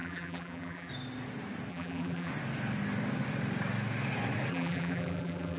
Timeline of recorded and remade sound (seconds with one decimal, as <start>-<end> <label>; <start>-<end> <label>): 0.0-0.9 remade; 0.9-1.7 recorded; 1.7-2.3 remade; 2.3-4.5 recorded; 4.5-5.6 remade